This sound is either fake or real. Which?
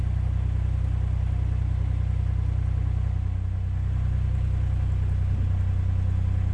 real